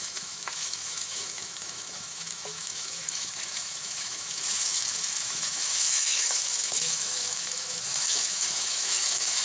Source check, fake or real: fake